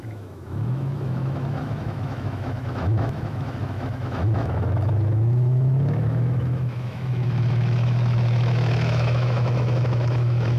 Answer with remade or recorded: remade